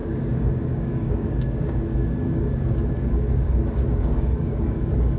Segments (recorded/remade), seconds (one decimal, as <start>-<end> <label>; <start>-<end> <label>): 0.0-5.2 remade